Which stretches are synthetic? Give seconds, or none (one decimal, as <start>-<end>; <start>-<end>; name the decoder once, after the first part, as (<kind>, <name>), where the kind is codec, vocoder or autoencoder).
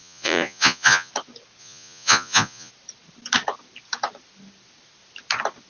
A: 0.0-1.1 (vocoder, Vocos); 1.6-2.7